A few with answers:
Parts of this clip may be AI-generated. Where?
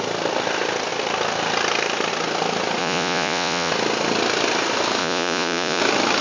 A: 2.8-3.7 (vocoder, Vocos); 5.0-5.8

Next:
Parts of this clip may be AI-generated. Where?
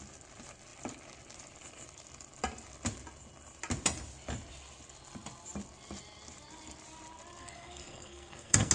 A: 7.4-8.7 (codec, SNAC)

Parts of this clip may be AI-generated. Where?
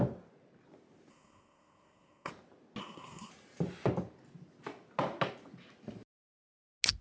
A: 1.1-2.3 (codec, SNAC); 2.8-3.3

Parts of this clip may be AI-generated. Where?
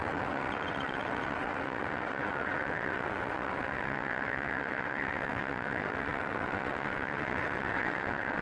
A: 0.0-8.4 (vocoder, WaveNeXt)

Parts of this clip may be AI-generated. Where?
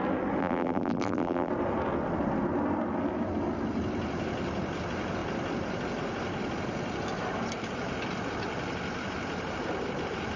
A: 0.4-1.5 (vocoder, BigVGAN v2)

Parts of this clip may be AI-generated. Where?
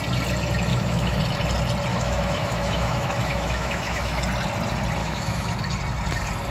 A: 0.7-1.2 (autoencoder, DAC-VAE); 1.9-4.2; 5.0-5.5